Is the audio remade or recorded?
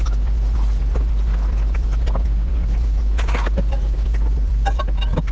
recorded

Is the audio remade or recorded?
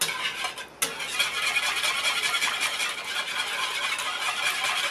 recorded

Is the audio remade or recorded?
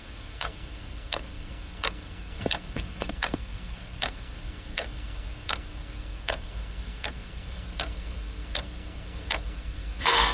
remade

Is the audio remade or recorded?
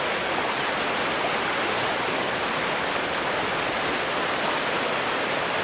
recorded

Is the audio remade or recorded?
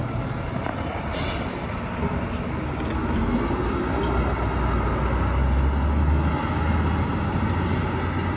recorded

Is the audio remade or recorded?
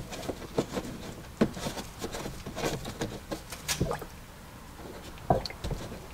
recorded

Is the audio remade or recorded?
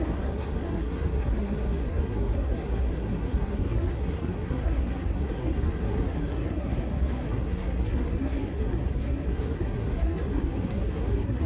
remade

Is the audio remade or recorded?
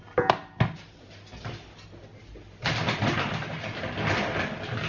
recorded